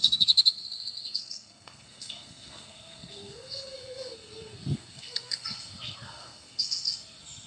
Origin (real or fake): fake